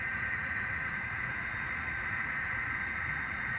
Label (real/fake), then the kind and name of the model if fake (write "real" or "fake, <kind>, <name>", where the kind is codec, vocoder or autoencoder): fake, vocoder, Vocos